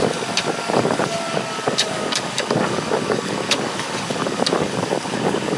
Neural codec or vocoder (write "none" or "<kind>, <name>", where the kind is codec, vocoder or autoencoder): codec, DAC